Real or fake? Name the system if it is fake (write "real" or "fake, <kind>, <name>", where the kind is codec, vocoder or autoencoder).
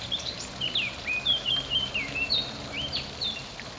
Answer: fake, vocoder, BigVGAN v2